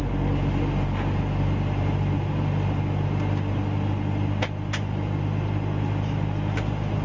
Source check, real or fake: real